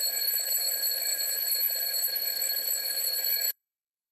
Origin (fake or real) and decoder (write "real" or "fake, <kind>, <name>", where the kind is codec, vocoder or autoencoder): fake, autoencoder, DAC-VAE